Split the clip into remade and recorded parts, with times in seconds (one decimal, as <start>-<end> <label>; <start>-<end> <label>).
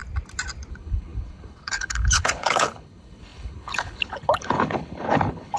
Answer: 0.0-0.7 recorded; 0.7-5.6 remade